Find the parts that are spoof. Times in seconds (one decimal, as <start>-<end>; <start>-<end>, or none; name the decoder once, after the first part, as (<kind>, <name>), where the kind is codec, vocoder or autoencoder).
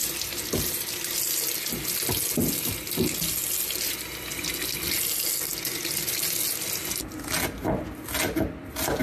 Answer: none